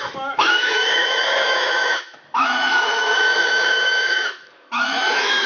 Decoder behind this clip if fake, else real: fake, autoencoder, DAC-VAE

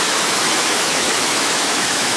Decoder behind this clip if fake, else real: fake, autoencoder, DAC-VAE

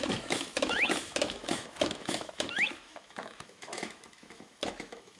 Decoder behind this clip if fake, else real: fake, autoencoder, DAC-VAE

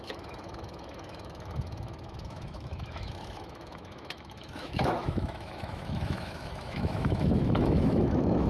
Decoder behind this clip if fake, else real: fake, autoencoder, DAC-VAE